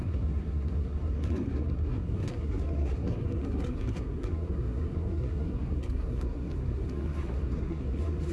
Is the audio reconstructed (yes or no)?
yes